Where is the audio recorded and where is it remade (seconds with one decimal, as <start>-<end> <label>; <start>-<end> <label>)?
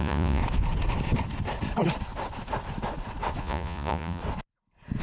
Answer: 0.0-0.4 remade; 0.4-3.4 recorded; 3.4-4.2 remade; 4.2-5.0 recorded